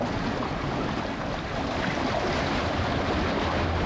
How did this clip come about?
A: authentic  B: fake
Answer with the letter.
A